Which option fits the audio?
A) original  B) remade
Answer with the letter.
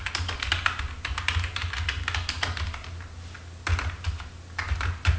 A